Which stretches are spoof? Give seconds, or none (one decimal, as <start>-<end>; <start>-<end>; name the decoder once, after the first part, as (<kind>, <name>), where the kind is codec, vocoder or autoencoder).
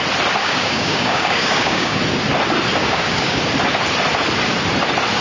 0.4-2.0 (codec, DAC); 2.8-3.4